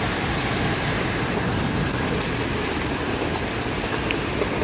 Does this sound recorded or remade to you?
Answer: recorded